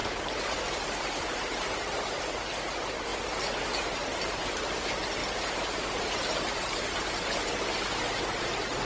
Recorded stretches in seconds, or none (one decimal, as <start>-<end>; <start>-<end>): 2.4-5.2